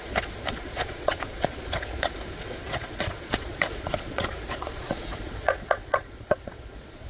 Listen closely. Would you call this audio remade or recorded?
remade